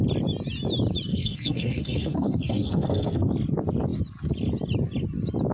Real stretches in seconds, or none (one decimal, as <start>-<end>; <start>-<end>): 0.0-1.1; 3.3-5.5